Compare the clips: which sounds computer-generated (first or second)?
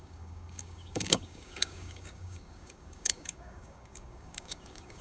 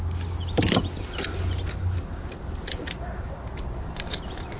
first